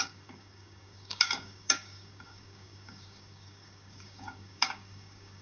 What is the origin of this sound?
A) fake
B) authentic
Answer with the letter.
A